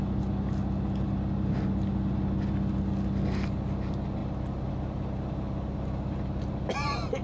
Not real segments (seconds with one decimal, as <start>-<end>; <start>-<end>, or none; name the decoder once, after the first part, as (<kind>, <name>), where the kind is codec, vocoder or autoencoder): none